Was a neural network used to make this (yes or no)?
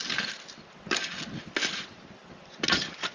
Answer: no